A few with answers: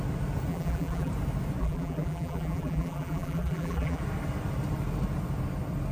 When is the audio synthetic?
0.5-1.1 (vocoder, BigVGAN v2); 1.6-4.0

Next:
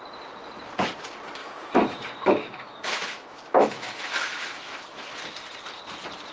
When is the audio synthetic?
1.4-5.2 (autoencoder, DAC-VAE)

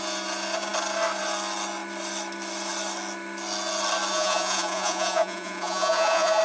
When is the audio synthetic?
4.1-6.4 (vocoder, Vocos)